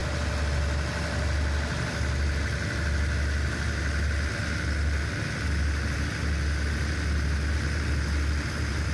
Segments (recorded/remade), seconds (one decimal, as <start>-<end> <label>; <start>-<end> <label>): 0.0-8.9 recorded